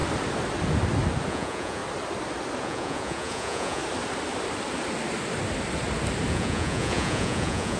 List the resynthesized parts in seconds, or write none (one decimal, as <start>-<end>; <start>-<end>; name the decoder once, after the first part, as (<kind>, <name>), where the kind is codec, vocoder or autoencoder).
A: 1.3-1.8 (vocoder, Vocos); 2.6-3.8; 6.3-7.8